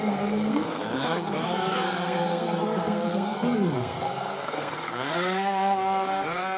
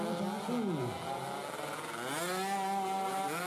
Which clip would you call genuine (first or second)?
second